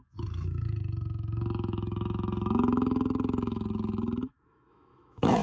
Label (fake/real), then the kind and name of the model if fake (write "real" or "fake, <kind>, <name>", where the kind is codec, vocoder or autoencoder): fake, autoencoder, DAC-VAE